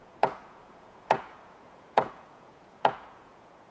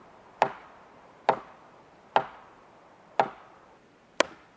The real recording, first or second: second